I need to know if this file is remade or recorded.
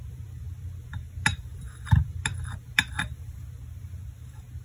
remade